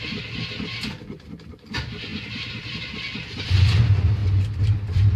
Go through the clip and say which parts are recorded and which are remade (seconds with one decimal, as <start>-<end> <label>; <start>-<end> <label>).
0.0-5.2 recorded